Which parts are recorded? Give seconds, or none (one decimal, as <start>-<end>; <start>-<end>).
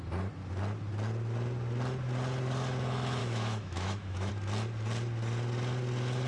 0.0-3.2; 4.3-6.3